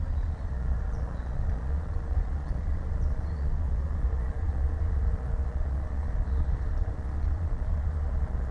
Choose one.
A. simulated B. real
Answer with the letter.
A